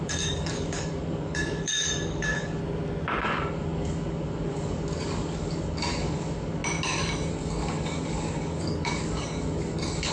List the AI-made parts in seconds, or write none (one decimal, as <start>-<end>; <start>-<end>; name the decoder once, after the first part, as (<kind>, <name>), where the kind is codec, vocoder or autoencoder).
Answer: 0.0-2.6 (codec, DAC); 3.2-6.6; 7.3-10.1